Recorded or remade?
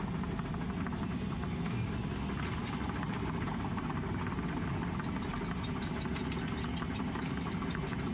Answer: recorded